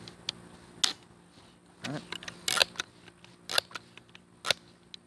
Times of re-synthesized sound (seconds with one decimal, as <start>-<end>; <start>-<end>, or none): none